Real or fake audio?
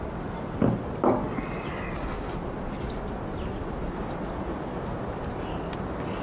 real